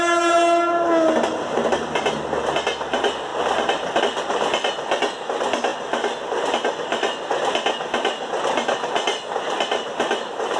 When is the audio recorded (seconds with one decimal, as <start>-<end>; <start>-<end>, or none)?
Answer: 0.0-10.6